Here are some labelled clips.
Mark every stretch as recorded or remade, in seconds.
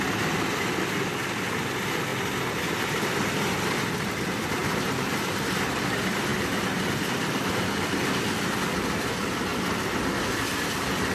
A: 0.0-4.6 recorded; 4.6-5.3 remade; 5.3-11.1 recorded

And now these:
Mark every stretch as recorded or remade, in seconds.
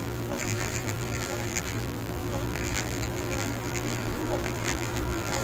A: 0.0-5.4 remade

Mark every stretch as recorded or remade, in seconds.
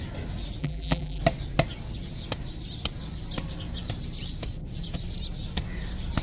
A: 0.0-0.6 recorded; 0.6-1.2 remade; 1.2-6.2 recorded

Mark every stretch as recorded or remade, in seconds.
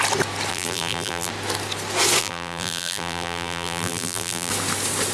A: 0.0-0.5 recorded; 0.5-1.3 remade; 1.3-2.2 recorded; 2.2-4.5 remade; 4.5-5.1 recorded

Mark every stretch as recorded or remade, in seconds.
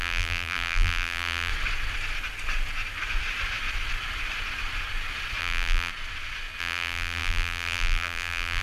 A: 0.0-1.5 remade; 1.5-5.4 recorded; 5.4-5.9 remade; 5.9-6.6 recorded; 6.6-8.6 remade